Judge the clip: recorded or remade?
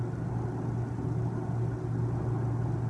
recorded